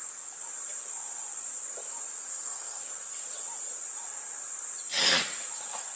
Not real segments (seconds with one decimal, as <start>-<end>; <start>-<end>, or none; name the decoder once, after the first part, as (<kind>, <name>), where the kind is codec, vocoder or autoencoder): 2.3-2.8 (codec, SNAC)